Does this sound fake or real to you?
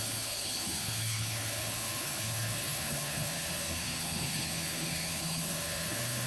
fake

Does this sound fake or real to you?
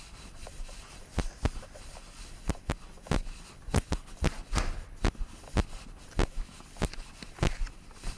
real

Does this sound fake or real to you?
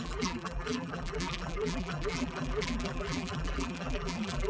fake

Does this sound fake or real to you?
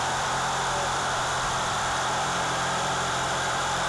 fake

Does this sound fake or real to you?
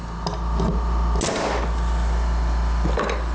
real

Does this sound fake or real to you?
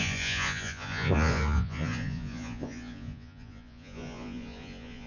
fake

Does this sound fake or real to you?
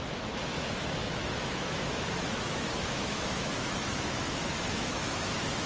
fake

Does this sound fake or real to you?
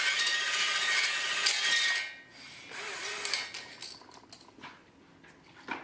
real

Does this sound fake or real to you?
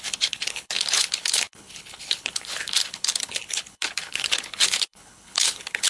fake